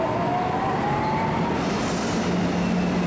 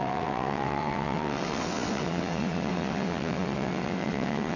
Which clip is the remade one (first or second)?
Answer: second